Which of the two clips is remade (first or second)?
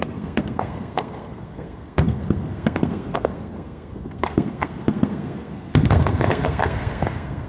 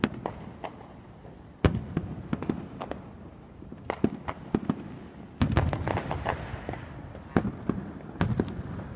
first